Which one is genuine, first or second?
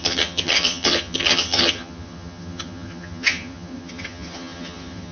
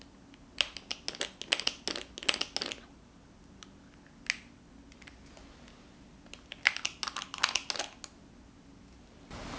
second